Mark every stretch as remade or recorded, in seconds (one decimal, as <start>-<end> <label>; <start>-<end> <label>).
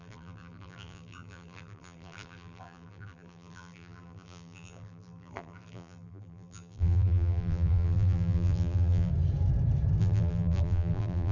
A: 0.0-9.1 remade; 9.1-10.0 recorded; 10.0-11.3 remade